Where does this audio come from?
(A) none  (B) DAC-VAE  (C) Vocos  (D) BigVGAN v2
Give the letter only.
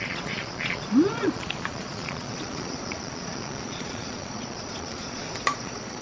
C